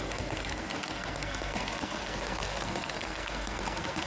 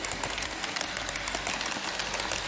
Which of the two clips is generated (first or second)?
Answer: first